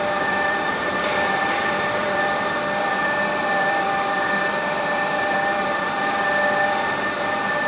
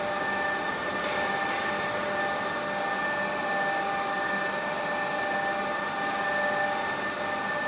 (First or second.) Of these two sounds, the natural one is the second